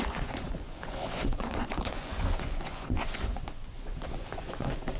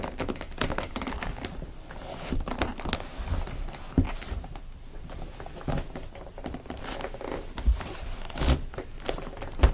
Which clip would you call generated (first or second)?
first